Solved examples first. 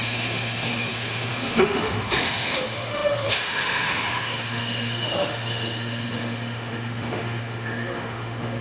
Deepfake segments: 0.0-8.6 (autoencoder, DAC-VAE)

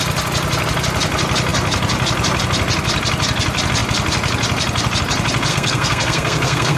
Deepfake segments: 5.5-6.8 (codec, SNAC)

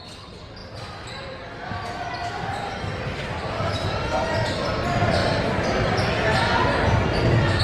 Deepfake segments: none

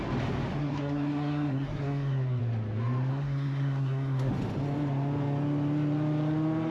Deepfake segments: 0.6-2.4 (codec, SNAC); 3.1-4.3